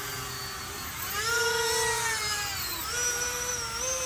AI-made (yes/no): no